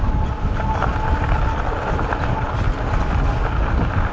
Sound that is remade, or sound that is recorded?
recorded